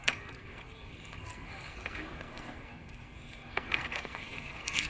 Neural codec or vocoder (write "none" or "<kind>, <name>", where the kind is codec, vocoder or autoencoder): codec, SNAC